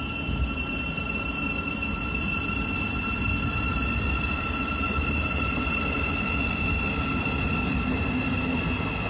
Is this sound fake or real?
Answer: real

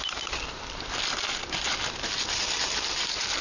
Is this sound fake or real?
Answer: real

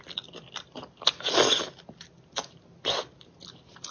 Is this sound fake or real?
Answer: real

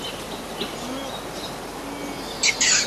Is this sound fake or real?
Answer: real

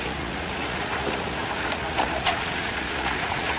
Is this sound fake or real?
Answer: fake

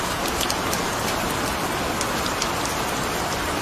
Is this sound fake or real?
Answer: real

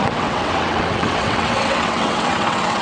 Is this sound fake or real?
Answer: fake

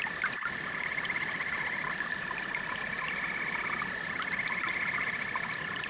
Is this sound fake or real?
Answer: real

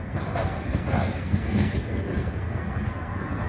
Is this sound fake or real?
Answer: fake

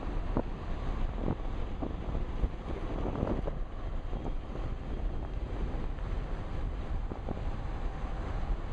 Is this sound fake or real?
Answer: real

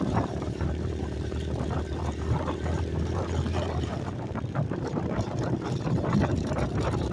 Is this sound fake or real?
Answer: fake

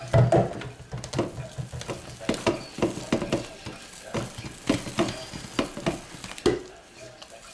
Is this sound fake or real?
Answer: real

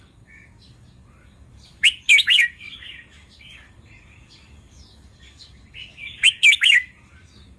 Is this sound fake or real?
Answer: fake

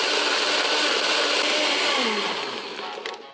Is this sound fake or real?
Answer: real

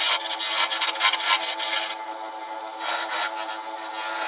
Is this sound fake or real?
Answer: real